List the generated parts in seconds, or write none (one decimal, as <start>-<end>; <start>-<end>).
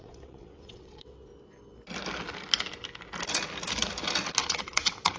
0.0-1.3; 4.4-5.2